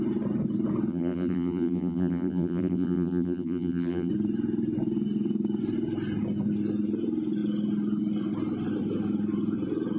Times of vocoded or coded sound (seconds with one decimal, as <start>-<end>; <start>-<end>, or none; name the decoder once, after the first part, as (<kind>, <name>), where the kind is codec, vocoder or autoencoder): 0.9-4.1 (vocoder, BigVGAN v2)